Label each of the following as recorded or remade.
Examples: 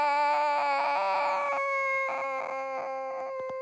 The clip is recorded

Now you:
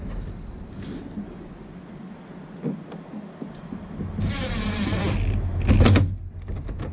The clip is recorded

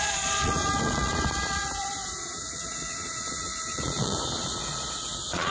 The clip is remade